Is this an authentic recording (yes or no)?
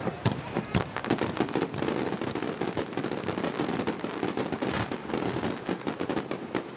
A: no